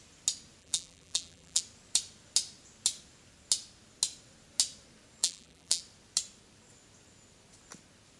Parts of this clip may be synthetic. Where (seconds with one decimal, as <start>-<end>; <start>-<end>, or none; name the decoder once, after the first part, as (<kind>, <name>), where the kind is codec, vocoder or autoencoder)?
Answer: 0.6-1.6 (vocoder, BigVGAN v2); 5.2-5.8